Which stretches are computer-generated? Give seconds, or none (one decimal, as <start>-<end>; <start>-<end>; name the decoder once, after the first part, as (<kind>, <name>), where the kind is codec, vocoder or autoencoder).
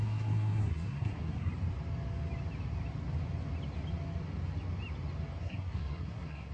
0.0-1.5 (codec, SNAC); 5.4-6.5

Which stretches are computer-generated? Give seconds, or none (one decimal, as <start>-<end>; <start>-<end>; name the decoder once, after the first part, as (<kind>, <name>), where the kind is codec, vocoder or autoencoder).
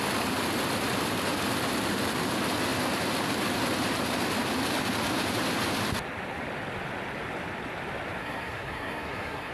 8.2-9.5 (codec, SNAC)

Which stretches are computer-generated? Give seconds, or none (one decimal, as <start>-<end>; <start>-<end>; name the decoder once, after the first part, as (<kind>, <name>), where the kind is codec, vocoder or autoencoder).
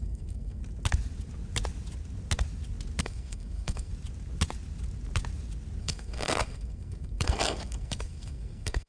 0.0-0.6 (codec, SNAC); 3.0-3.9; 5.8-8.9